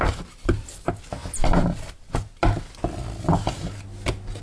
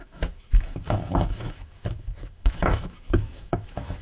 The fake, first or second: second